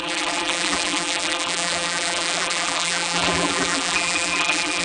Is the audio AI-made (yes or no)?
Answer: yes